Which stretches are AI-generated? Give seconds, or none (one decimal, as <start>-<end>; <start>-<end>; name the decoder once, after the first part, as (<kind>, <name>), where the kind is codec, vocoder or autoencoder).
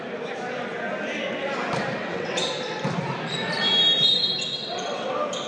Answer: 2.0-2.5 (vocoder, WaveNeXt); 4.5-5.1